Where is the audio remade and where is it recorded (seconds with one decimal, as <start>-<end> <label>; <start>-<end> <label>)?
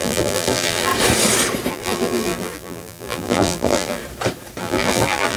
0.0-0.9 remade; 0.9-1.7 recorded; 1.7-4.0 remade; 4.0-4.6 recorded; 4.6-5.4 remade